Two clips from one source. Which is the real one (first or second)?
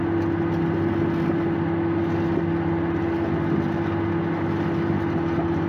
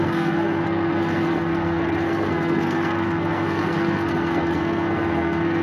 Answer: first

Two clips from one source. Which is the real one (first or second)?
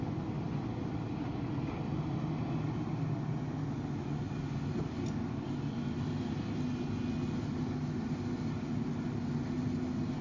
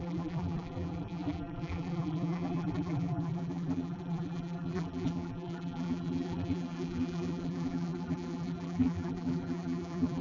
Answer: first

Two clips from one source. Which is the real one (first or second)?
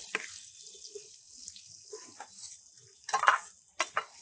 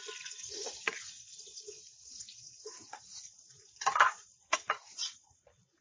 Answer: first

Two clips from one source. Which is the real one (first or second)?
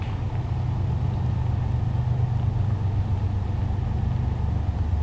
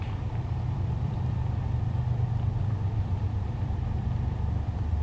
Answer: first